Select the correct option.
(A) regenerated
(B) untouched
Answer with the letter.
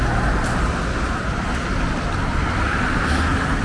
B